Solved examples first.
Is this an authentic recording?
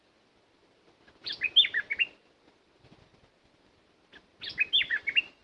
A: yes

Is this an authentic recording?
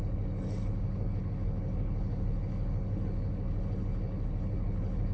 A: no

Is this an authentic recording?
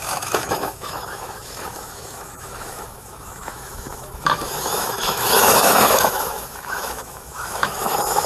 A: no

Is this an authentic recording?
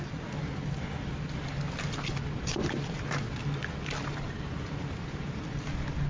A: yes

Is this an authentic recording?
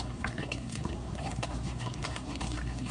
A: no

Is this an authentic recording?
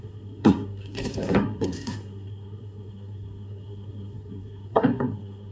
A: no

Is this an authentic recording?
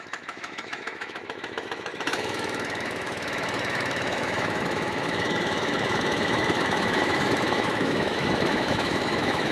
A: no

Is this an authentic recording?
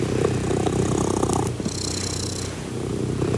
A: yes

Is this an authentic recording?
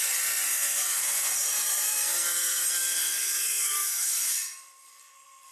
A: no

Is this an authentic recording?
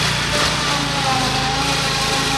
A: no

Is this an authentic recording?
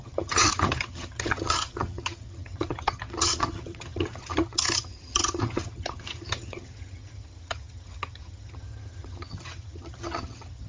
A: no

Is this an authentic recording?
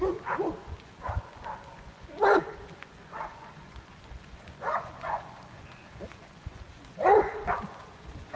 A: no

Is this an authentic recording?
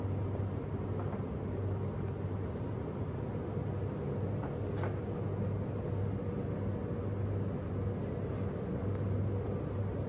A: yes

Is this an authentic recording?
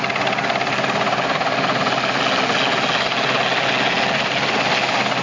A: yes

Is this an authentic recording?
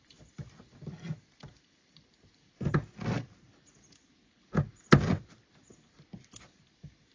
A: yes